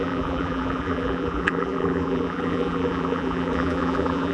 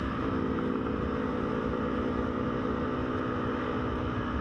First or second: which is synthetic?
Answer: first